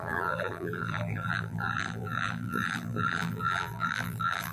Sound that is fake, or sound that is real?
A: fake